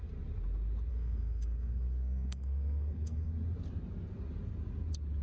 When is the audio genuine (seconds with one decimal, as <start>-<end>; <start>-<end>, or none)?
0.0-0.9; 3.3-5.2